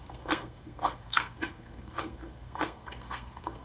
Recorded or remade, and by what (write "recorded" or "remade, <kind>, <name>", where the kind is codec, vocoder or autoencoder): remade, codec, SNAC